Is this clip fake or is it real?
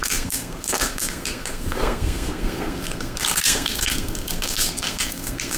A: fake